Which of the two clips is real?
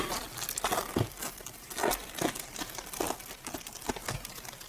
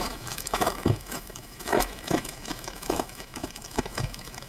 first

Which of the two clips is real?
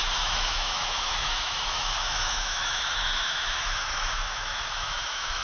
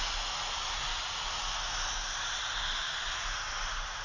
second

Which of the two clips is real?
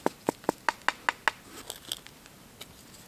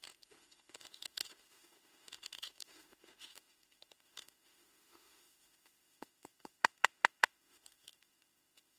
first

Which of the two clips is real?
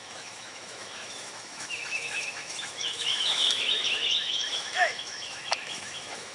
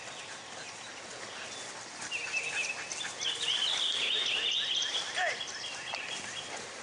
second